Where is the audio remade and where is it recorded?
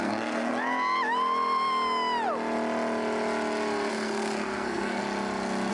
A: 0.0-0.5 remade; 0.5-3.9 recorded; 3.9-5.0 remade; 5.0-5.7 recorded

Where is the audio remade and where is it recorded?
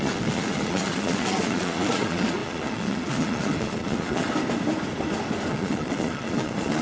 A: 0.0-4.3 remade; 4.3-5.5 recorded; 5.5-6.8 remade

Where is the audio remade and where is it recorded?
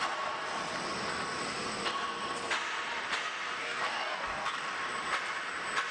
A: 0.0-3.6 recorded; 3.6-4.7 remade; 4.7-5.9 recorded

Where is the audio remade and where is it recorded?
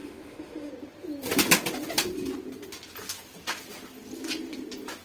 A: 0.0-0.7 remade; 0.7-5.0 recorded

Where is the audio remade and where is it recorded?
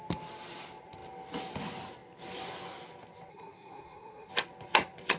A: 0.0-3.3 recorded; 3.3-4.3 remade; 4.3-5.2 recorded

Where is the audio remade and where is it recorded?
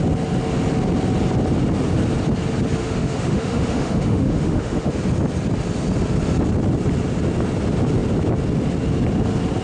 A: 0.0-2.8 recorded; 2.8-4.9 remade; 4.9-9.6 recorded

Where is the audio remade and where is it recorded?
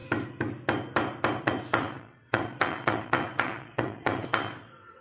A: 0.0-1.4 recorded; 1.4-5.0 remade